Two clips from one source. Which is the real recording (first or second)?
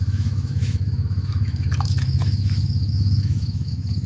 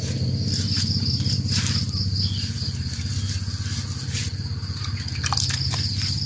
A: second